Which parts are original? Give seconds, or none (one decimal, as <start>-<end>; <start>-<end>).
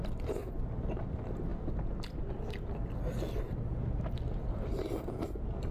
0.0-5.7